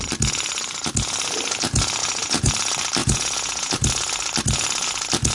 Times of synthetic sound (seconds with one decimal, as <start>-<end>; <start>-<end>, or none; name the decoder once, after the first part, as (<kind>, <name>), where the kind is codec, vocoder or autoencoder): 2.0-2.5 (vocoder, Vocos); 3.0-3.7